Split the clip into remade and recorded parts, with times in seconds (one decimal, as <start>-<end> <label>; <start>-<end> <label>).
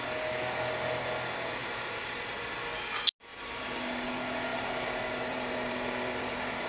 0.0-1.6 recorded; 1.6-2.2 remade; 2.2-3.3 recorded; 3.3-4.1 remade; 4.1-4.5 recorded; 4.5-6.7 remade